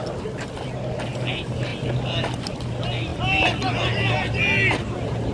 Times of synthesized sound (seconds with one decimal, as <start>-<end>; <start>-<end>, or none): none